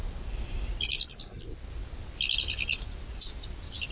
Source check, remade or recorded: recorded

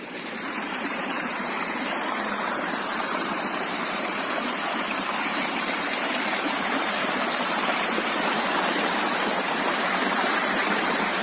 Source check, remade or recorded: remade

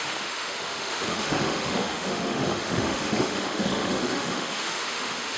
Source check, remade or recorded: remade